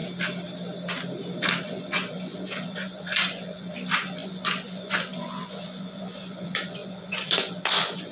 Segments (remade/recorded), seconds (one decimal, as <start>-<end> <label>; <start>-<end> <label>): 0.0-1.6 recorded; 1.6-8.1 remade